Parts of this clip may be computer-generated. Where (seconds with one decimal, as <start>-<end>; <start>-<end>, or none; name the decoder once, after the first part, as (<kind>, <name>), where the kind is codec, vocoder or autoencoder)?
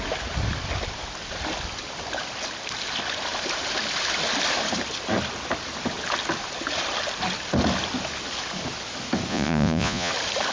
9.3-10.1 (vocoder, Vocos)